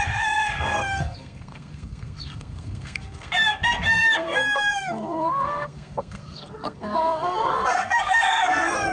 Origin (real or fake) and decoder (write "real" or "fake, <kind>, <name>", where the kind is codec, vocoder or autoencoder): fake, codec, SNAC